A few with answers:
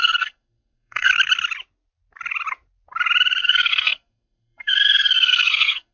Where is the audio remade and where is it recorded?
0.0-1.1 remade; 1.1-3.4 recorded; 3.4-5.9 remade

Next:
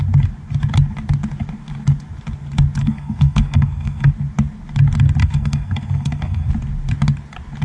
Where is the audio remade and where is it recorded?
0.0-2.8 recorded; 2.8-4.1 remade; 4.1-5.2 recorded; 5.2-6.5 remade; 6.5-7.6 recorded